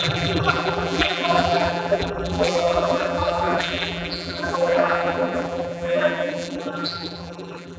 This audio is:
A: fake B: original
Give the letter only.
A